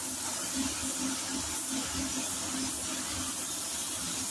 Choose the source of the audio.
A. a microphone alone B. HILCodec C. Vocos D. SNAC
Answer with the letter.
A